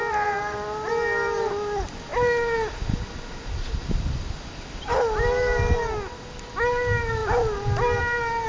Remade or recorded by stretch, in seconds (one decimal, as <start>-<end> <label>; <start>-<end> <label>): 0.0-8.5 recorded